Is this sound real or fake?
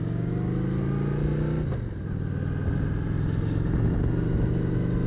real